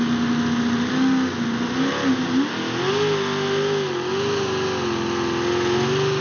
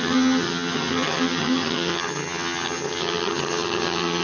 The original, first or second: first